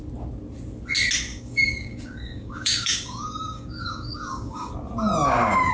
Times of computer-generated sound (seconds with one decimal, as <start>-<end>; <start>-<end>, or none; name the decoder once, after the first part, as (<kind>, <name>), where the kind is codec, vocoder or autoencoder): 1.3-4.7 (codec, DAC)